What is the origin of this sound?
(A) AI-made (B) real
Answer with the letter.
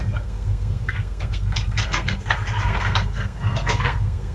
A